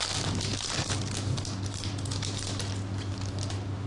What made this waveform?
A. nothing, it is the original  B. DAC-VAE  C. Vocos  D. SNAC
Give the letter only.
A